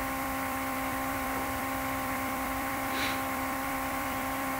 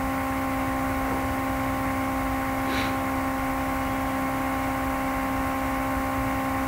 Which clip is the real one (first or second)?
second